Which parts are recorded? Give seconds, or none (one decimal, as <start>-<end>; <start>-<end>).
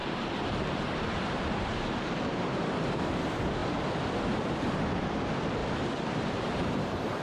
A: 3.0-5.6